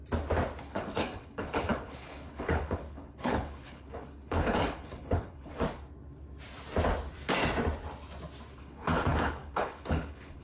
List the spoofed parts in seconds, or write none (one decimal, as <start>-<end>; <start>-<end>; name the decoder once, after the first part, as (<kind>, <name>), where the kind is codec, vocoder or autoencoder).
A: 0.6-5.5 (codec, HILCodec); 8.6-10.4